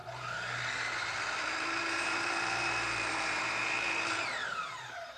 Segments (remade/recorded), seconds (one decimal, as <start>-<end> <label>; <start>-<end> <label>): 0.0-5.2 remade